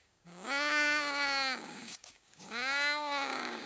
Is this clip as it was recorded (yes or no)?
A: no